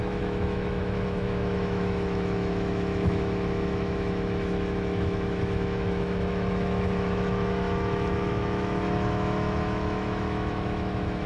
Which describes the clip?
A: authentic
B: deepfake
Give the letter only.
B